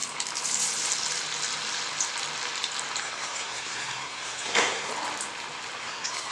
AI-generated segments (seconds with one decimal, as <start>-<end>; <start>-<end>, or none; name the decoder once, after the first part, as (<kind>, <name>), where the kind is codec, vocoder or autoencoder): 3.0-4.9 (codec, SNAC); 5.8-6.3